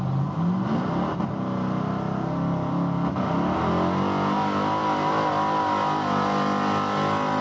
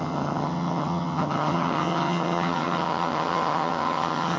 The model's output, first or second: second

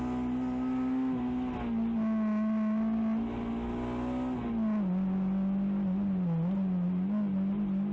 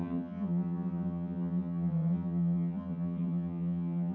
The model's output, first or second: second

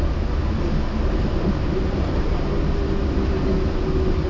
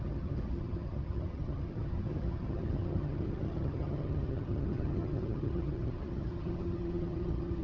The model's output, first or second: second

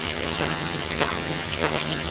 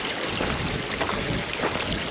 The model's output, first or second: first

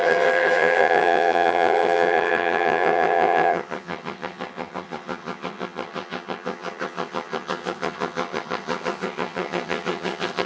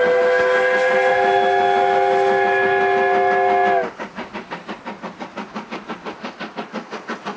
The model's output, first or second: first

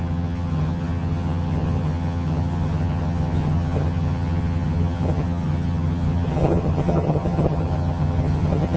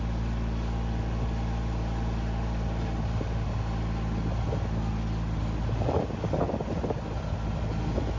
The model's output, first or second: first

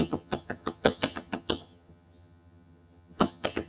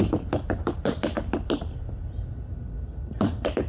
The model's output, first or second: first